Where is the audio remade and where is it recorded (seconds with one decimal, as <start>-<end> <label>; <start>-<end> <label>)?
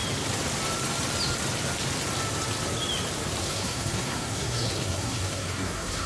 0.0-3.4 recorded; 3.4-6.1 remade